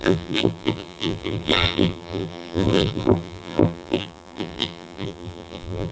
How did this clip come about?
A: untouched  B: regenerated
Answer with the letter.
B